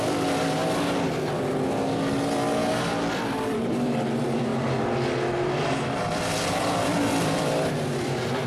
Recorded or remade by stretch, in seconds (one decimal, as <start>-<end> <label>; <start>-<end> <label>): 0.0-0.6 remade; 0.6-3.1 recorded; 3.1-4.5 remade; 4.5-5.7 recorded; 5.7-8.5 remade